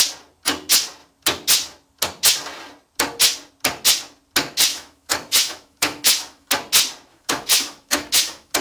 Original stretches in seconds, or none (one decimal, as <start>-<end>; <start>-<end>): 0.0-4.7; 6.5-7.1